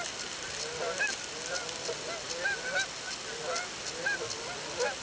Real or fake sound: real